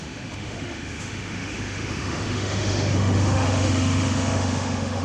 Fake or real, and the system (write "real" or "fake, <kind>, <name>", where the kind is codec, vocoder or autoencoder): fake, autoencoder, DAC-VAE